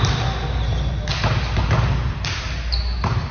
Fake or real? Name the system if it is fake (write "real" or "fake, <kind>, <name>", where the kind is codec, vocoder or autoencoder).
real